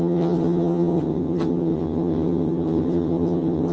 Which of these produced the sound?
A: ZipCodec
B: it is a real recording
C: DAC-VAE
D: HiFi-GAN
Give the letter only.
D